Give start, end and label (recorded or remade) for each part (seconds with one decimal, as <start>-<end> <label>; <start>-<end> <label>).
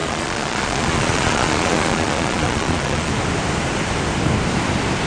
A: 0.0-3.1 remade; 3.1-5.1 recorded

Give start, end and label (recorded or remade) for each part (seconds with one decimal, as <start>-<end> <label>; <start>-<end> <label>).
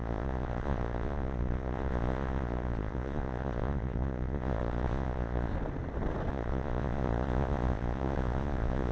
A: 0.0-5.5 remade; 5.5-6.3 recorded; 6.3-8.9 remade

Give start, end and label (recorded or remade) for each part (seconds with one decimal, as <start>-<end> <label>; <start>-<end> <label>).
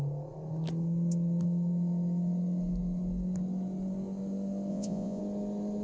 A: 0.0-4.7 recorded; 4.7-5.2 remade; 5.2-5.8 recorded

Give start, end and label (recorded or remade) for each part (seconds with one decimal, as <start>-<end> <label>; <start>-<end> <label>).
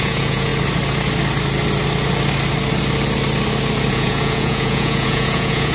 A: 0.0-0.5 remade; 0.5-3.9 recorded; 3.9-5.7 remade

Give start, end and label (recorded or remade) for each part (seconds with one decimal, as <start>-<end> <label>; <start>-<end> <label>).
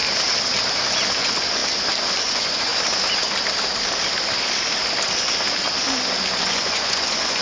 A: 0.0-1.2 recorded; 1.2-1.6 remade; 1.6-2.2 recorded; 2.2-2.7 remade; 2.7-6.4 recorded; 6.4-7.4 remade